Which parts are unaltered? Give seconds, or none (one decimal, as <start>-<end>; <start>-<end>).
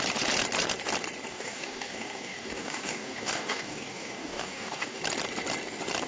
0.0-1.3; 5.0-6.1